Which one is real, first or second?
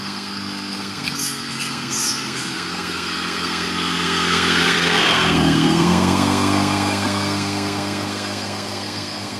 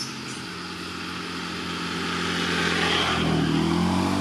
second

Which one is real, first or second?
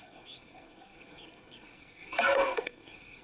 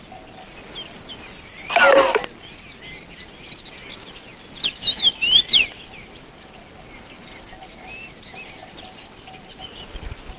second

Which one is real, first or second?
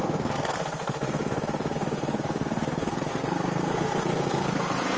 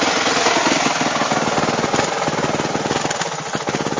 second